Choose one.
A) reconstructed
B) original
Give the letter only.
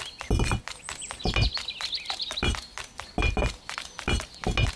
B